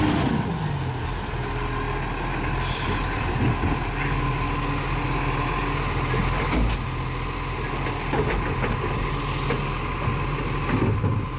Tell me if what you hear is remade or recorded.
recorded